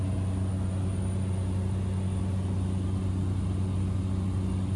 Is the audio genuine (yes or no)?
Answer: yes